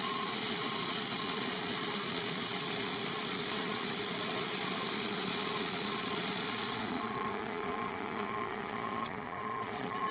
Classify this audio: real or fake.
fake